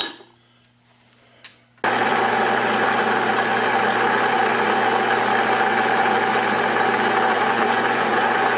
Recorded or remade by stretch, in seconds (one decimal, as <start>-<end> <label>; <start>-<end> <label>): 0.0-7.3 recorded; 7.3-8.6 remade